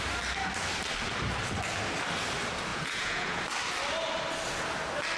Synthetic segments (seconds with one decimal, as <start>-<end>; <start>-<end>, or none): 2.7-3.4